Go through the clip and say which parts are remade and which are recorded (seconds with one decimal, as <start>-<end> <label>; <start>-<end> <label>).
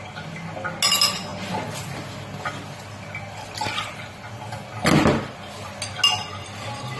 0.0-7.0 recorded